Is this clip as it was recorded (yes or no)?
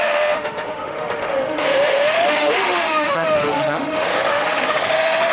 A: no